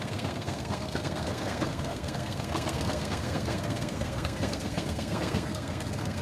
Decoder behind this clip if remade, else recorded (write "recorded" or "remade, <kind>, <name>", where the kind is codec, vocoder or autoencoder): remade, codec, SNAC